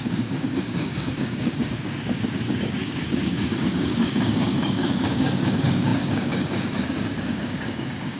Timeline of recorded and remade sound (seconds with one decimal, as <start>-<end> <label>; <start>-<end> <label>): 0.0-8.2 remade